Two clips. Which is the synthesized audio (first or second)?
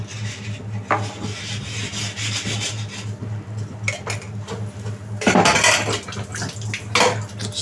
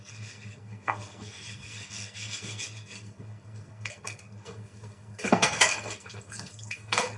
second